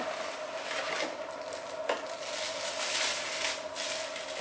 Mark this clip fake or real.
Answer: real